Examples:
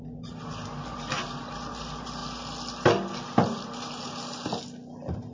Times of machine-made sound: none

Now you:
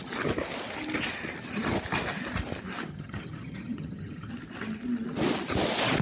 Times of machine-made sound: 2.9-4.3 (vocoder, HiFi-GAN)

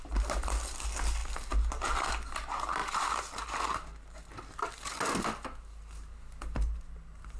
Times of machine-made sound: none